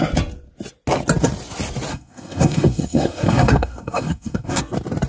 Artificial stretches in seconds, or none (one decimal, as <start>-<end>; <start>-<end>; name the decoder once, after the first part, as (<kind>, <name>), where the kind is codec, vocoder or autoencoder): 1.9-4.6 (codec, SNAC)